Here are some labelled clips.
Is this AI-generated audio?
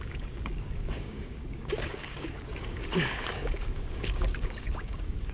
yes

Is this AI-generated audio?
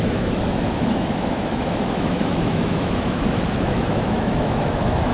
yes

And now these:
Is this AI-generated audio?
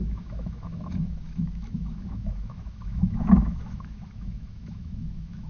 yes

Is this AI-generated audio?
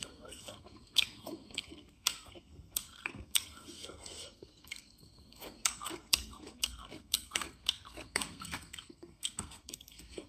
yes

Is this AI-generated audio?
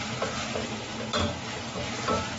yes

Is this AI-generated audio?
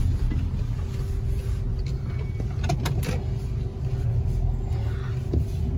no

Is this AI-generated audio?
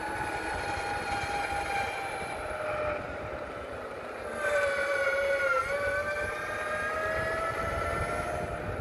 no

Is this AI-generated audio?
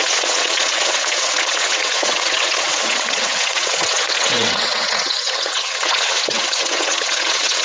yes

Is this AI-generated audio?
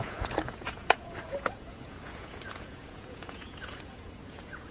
yes